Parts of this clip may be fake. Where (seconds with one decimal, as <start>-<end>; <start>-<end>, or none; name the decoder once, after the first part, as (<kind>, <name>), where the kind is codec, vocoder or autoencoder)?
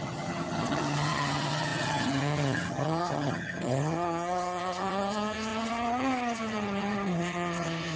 0.0-8.0 (vocoder, HiFi-GAN)